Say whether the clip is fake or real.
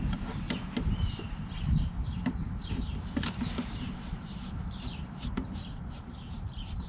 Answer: fake